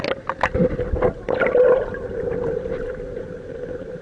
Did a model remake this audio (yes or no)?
no